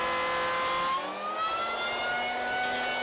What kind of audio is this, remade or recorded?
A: recorded